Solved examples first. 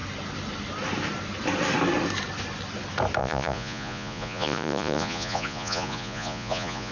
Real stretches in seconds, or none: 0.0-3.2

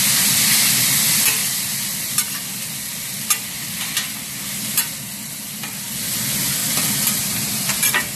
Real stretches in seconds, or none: 0.0-1.4; 4.2-6.6